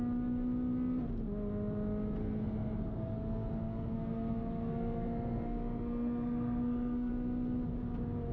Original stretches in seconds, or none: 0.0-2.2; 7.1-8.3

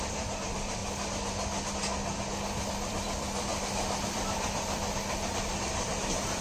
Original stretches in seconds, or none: 0.8-2.7

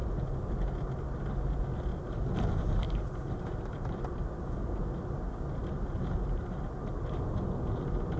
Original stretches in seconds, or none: 0.0-1.9; 4.9-8.2

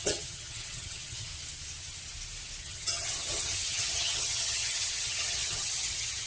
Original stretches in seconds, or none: 1.3-2.6